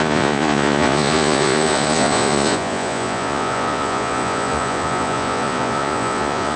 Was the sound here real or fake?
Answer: fake